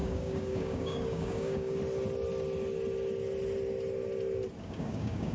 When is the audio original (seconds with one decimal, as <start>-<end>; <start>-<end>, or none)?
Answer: 1.8-4.6